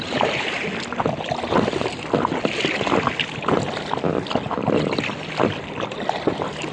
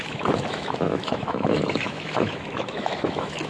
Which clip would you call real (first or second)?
first